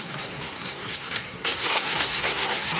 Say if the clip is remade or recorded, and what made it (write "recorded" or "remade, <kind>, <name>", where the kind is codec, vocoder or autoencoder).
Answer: remade, codec, SNAC